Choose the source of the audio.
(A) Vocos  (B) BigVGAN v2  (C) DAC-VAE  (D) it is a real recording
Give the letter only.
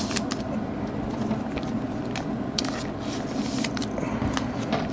D